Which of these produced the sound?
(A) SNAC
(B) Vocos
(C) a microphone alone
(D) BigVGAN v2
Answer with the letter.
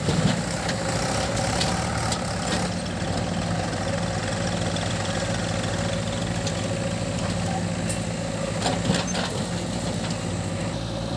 C